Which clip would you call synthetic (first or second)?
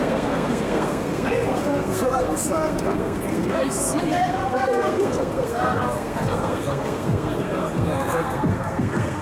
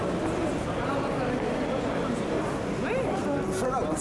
first